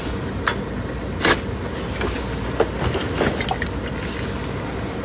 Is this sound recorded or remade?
recorded